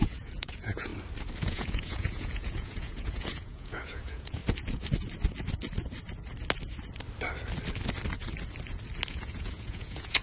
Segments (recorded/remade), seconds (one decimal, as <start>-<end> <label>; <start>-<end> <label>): 0.0-0.9 remade; 0.9-1.4 recorded; 1.4-4.4 remade; 4.4-9.1 recorded; 9.1-10.2 remade